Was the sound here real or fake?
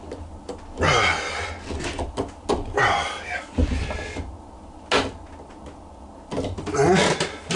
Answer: real